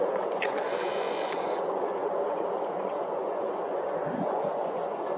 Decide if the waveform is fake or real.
fake